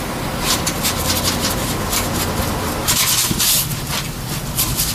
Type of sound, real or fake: real